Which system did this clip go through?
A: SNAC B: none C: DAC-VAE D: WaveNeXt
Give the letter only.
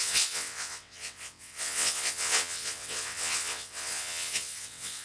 D